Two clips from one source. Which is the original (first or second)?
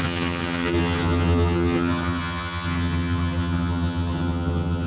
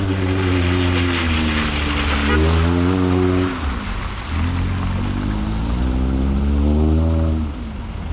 second